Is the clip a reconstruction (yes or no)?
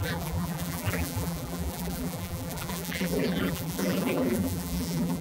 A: yes